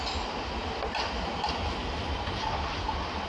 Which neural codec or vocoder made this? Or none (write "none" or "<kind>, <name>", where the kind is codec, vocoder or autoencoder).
none